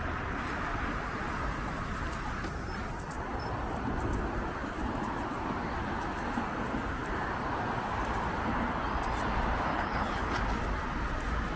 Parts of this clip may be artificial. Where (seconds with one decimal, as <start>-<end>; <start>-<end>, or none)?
9.7-10.4

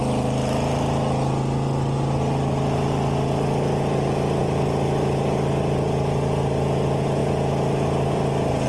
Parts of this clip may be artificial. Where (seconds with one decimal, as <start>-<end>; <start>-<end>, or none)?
none

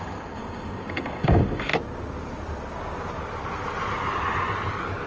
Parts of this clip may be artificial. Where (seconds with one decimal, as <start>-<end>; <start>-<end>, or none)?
0.0-1.7

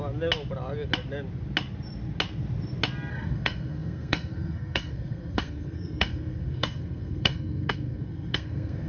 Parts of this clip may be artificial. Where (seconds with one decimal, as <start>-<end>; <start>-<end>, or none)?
3.1-8.9